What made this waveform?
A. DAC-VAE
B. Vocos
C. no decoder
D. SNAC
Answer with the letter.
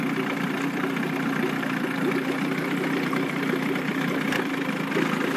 C